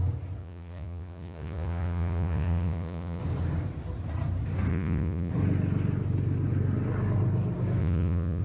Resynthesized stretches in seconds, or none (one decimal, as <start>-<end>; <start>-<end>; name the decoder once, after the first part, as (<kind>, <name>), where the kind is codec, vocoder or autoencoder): 0.4-3.2 (vocoder, Vocos); 4.7-5.3; 7.8-8.4